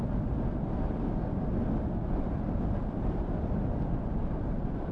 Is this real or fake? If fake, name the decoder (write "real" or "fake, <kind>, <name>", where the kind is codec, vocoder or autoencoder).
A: real